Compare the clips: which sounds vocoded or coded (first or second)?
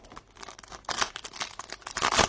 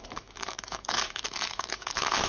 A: second